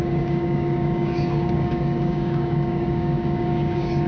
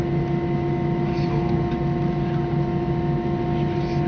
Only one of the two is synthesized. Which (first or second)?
first